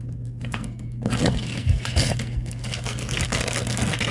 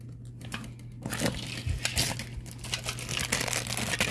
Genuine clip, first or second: second